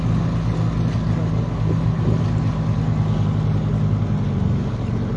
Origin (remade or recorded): recorded